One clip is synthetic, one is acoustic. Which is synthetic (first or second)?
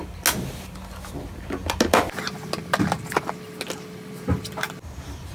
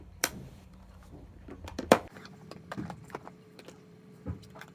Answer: second